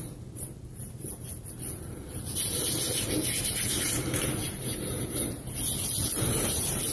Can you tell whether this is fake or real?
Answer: fake